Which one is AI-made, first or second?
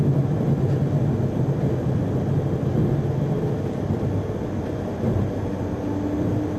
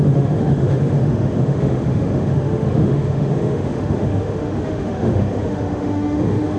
second